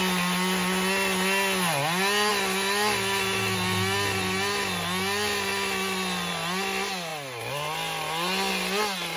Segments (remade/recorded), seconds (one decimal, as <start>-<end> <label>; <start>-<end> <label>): 0.0-9.2 recorded